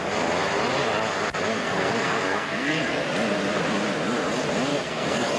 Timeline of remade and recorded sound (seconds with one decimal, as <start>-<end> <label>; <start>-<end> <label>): 0.0-1.5 recorded; 1.5-2.9 remade; 2.9-4.7 recorded; 4.7-5.4 remade